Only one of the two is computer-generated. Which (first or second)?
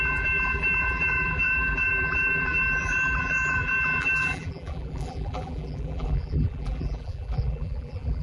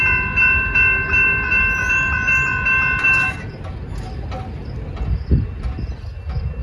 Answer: first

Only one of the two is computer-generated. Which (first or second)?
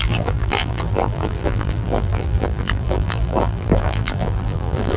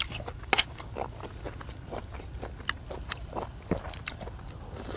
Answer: first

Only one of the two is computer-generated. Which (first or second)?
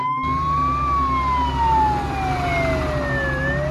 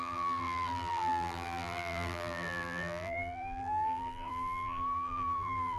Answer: second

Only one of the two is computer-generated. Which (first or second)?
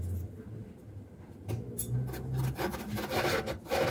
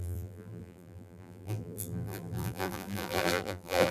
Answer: second